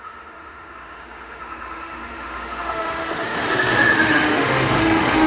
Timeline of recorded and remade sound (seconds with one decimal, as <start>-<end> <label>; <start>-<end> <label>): 0.0-5.3 remade